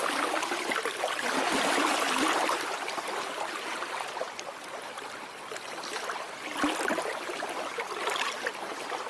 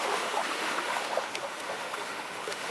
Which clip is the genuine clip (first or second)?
first